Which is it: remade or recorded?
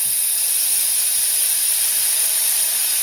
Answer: recorded